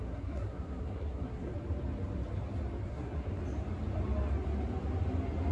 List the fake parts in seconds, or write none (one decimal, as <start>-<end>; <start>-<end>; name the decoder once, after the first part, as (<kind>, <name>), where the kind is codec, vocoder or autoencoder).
0.0-1.5 (codec, SNAC); 2.9-3.4